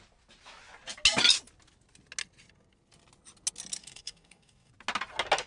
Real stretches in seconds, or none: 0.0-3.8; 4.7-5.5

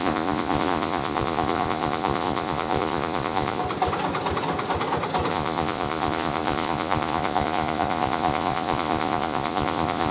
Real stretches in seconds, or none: 3.6-5.3

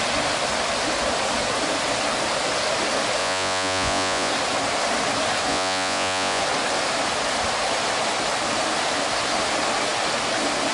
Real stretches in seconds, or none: 0.0-3.2; 4.3-5.5; 6.4-10.7